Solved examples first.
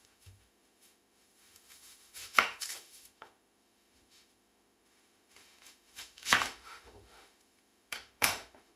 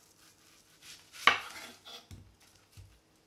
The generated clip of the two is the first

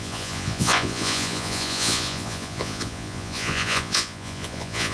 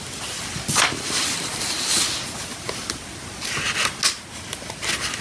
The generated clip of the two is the first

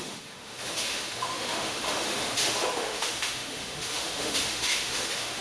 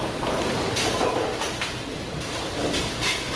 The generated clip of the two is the first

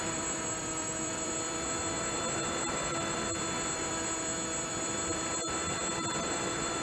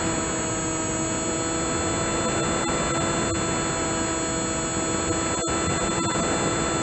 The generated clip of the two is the first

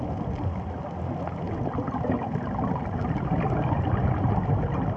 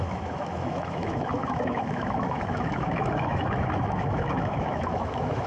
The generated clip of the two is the second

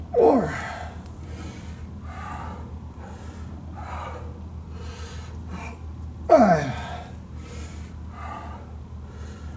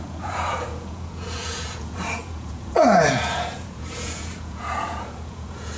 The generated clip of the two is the second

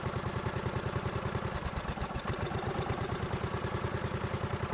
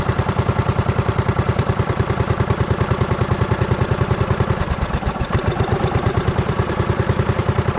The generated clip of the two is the second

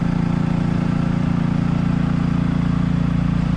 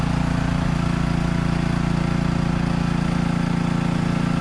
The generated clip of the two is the first